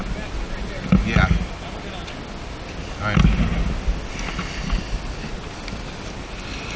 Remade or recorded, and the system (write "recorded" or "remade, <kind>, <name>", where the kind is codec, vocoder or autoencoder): recorded